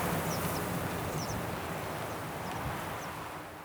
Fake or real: real